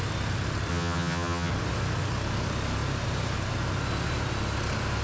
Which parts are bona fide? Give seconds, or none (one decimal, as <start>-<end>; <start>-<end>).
0.0-0.7; 1.5-5.0